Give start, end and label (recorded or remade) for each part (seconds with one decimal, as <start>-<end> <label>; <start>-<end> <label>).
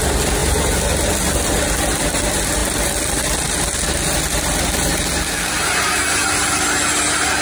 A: 0.0-7.4 recorded